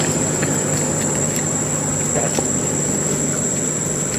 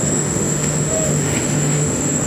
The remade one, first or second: second